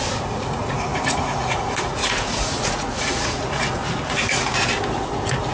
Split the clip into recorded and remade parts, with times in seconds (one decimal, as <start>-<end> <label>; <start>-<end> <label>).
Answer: 0.0-3.8 remade; 3.8-5.5 recorded